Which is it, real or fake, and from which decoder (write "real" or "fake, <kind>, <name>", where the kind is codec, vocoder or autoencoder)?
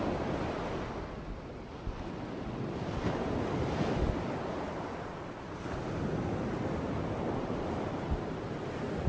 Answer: real